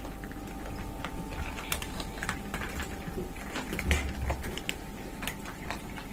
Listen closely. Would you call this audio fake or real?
real